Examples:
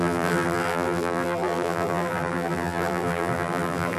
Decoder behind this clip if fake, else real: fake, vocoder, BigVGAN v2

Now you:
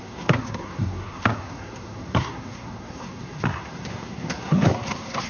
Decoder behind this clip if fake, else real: fake, codec, SNAC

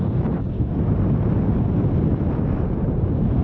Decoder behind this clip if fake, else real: real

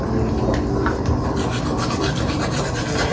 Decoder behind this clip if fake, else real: real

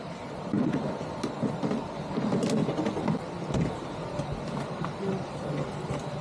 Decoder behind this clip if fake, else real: real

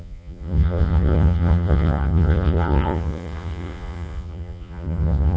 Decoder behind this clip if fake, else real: fake, vocoder, Vocos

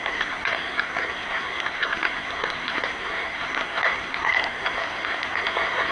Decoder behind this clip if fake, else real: fake, codec, SNAC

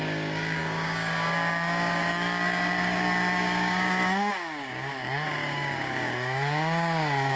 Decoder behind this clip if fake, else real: fake, codec, DAC